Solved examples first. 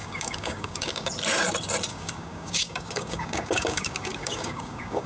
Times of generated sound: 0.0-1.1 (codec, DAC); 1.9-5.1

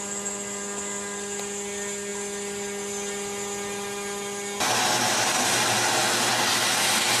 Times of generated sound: none